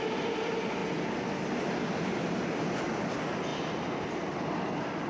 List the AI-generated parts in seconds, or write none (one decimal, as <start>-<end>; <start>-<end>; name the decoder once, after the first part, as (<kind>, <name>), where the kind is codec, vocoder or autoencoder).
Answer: 0.0-0.8 (vocoder, BigVGAN v2); 2.6-5.1